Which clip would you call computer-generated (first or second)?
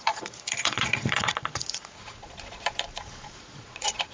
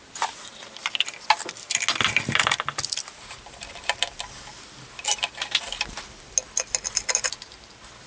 first